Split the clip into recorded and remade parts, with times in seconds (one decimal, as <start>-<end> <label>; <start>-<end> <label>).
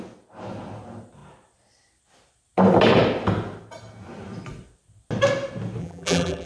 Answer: 0.0-5.8 recorded; 5.8-6.5 remade